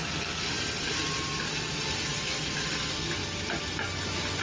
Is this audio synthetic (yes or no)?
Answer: no